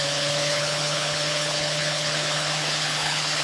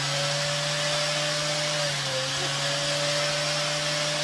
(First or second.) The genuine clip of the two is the second